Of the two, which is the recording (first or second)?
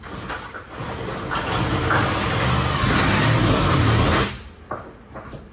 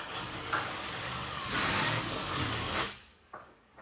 first